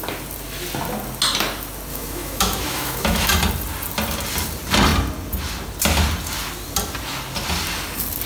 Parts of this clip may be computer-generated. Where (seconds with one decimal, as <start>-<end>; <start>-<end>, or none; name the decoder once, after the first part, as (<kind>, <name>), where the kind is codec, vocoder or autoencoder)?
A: 1.9-3.3 (autoencoder, DAC-VAE)